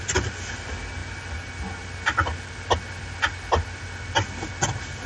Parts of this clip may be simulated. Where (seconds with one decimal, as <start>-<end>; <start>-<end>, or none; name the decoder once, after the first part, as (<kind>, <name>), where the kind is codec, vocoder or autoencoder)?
none